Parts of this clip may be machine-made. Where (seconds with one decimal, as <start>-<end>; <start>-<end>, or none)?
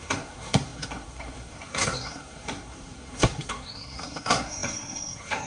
0.0-5.5